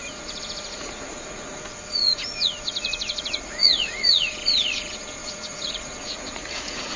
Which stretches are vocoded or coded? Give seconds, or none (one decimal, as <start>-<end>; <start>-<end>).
0.0-7.0